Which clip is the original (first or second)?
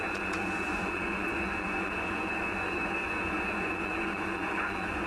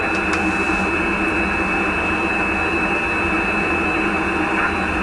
second